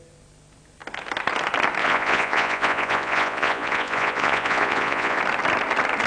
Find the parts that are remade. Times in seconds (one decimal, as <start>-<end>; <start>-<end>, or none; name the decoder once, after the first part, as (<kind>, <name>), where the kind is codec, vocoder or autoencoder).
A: 1.8-5.2 (vocoder, Vocos)